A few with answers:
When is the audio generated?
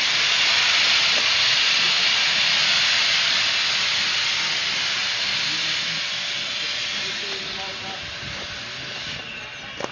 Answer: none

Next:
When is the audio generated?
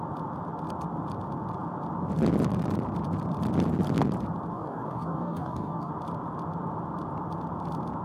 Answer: 4.5-5.9 (codec, DAC)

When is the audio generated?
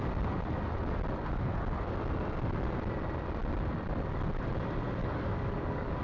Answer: 5.0-6.0 (codec, DAC)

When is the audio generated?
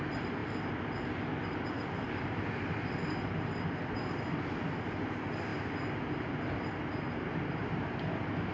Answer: none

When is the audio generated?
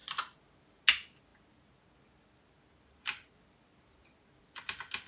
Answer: none